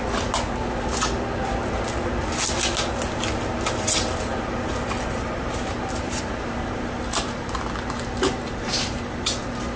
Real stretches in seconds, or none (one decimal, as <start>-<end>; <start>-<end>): 0.0-4.3; 6.9-9.8